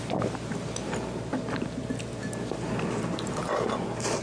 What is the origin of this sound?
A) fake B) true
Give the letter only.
B